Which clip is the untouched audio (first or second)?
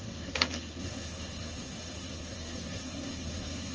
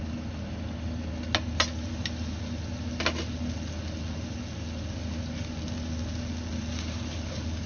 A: second